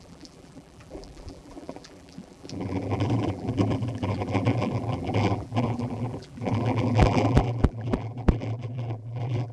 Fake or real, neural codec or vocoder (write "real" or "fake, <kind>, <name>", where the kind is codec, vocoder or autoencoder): fake, vocoder, BigVGAN v2